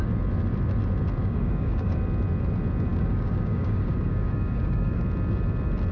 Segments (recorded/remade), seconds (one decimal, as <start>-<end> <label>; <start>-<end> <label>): 0.0-1.2 recorded; 1.2-2.0 remade; 2.0-2.9 recorded; 2.9-5.0 remade; 5.0-5.9 recorded